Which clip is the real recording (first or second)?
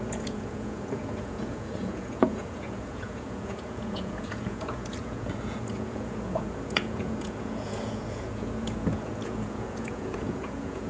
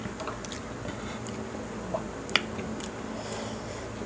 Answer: second